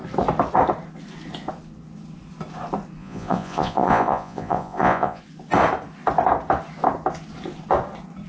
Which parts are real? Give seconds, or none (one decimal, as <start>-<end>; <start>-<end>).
0.0-3.0; 5.2-8.3